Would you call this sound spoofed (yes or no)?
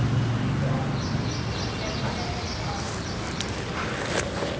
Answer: no